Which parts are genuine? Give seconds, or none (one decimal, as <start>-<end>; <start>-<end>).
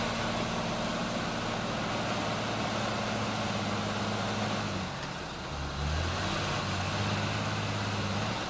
0.0-8.5